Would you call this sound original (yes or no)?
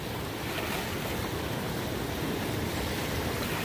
yes